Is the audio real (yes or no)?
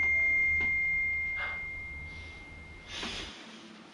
yes